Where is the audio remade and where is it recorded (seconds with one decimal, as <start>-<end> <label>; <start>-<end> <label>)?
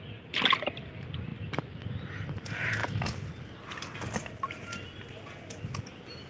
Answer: 0.0-6.3 recorded